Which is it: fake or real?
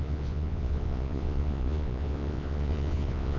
fake